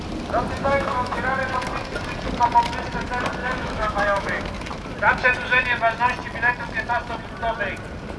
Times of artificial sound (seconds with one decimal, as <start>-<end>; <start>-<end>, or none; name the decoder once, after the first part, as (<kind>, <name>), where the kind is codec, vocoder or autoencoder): 0.6-1.2 (autoencoder, DAC-VAE); 3.4-4.4